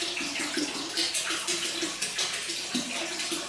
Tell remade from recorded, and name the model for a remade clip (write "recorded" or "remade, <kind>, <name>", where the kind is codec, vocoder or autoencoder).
recorded